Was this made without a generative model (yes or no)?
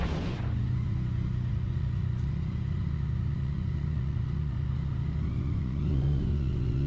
no